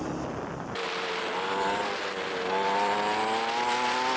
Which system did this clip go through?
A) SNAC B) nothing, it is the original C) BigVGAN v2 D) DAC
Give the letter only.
B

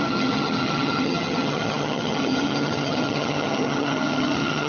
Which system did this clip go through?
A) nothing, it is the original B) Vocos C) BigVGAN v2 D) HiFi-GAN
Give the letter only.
D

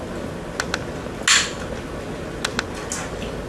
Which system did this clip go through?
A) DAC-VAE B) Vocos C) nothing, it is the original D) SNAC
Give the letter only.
C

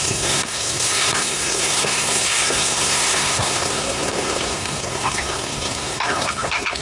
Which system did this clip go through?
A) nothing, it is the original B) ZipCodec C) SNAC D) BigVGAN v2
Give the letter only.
C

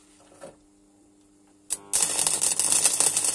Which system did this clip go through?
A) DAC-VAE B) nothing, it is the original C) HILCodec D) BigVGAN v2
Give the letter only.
B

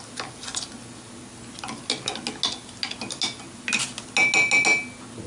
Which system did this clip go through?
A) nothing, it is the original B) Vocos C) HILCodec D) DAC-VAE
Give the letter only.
A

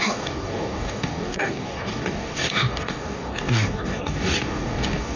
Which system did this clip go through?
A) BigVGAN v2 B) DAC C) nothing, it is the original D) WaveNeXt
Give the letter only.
B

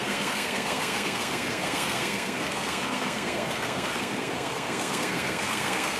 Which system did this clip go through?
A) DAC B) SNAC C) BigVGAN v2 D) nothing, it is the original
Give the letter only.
B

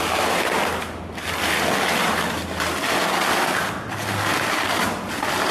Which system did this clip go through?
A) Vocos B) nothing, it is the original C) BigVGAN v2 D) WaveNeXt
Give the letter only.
B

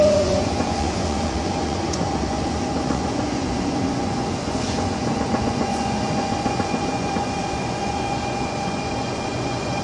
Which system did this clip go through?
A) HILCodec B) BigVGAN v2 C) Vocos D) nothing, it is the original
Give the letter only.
C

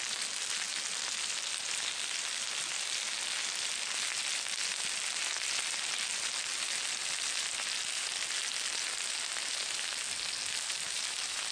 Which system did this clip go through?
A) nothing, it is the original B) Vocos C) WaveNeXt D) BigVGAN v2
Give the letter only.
A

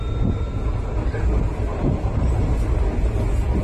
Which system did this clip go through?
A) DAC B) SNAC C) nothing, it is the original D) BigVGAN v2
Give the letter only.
C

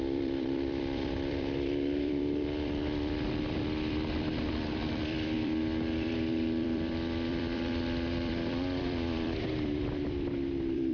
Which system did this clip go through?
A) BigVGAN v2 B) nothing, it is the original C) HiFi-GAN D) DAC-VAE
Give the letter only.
A